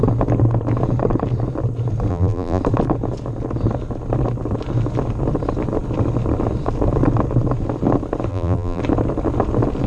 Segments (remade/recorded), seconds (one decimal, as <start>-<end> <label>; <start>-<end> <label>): 0.0-2.1 recorded; 2.1-2.6 remade; 2.6-8.3 recorded; 8.3-8.8 remade; 8.8-9.9 recorded